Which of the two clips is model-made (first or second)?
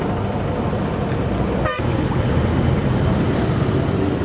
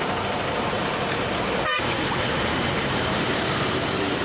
second